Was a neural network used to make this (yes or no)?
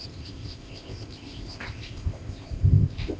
yes